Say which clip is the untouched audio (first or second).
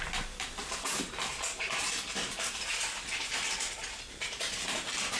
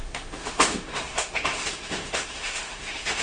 first